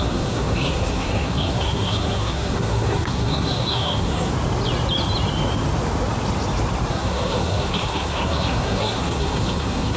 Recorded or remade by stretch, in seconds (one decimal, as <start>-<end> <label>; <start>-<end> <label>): 0.0-4.3 remade; 4.3-6.9 recorded; 6.9-10.0 remade